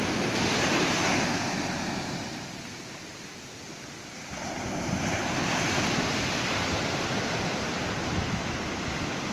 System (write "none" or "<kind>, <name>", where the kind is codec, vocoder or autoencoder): none